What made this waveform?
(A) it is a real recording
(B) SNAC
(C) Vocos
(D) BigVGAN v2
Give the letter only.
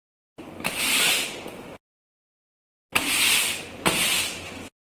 A